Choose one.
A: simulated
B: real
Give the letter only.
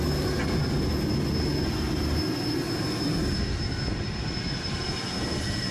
B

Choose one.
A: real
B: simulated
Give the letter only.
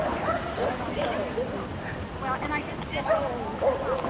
A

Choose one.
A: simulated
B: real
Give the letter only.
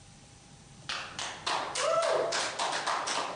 A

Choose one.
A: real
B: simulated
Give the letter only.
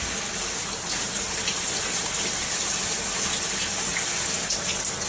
A